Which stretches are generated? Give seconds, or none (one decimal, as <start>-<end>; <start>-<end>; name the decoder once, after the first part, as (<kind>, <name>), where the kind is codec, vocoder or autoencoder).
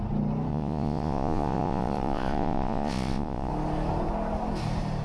0.5-3.5 (vocoder, Vocos)